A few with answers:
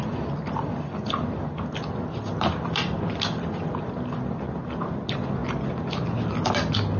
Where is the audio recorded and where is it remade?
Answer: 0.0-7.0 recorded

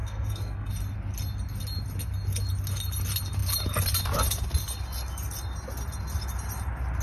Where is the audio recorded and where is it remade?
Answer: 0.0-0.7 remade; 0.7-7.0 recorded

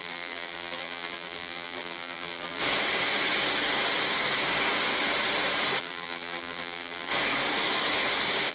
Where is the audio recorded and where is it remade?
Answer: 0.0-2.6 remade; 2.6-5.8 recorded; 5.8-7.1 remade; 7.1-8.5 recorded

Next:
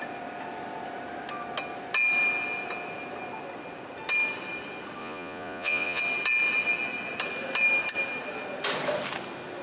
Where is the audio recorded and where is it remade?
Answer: 0.0-5.0 recorded; 5.0-6.0 remade; 6.0-9.6 recorded

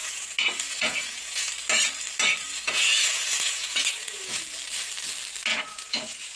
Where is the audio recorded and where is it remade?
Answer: 0.0-1.5 remade; 1.5-2.4 recorded; 2.4-4.4 remade; 4.4-5.5 recorded; 5.5-6.4 remade

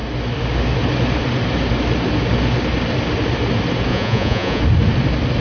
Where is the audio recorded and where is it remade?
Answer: 0.0-3.9 recorded; 3.9-4.6 remade; 4.6-5.4 recorded